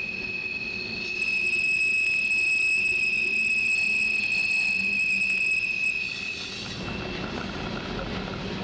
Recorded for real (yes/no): yes